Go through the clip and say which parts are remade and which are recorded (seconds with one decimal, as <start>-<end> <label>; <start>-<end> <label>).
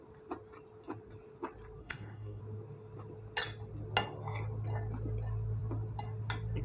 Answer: 0.0-1.8 recorded; 1.8-2.4 remade; 2.4-6.6 recorded